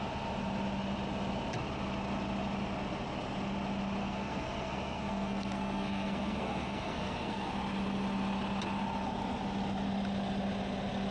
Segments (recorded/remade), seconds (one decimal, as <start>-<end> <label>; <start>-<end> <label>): 0.0-4.0 recorded; 4.0-7.5 remade; 7.5-11.1 recorded